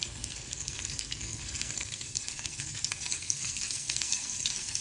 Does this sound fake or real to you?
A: fake